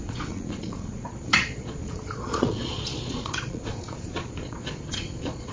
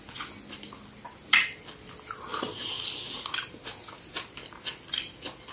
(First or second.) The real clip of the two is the second